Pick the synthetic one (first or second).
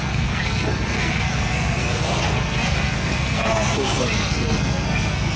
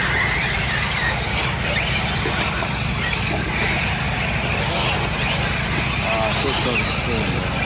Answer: first